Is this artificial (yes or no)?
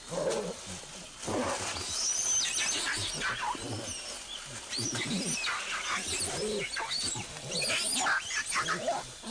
no